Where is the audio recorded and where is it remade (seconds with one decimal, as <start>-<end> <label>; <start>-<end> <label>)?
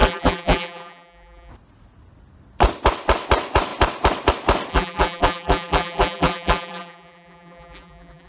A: 0.0-1.5 remade; 1.5-4.7 recorded; 4.7-8.3 remade